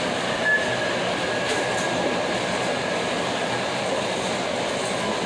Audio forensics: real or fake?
real